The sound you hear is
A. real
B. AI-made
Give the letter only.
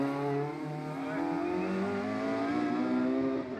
A